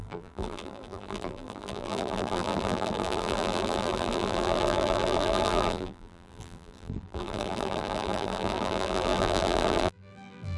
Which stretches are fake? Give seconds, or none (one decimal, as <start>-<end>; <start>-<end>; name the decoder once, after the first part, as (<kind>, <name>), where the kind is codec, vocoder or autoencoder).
0.0-10.6 (vocoder, BigVGAN v2)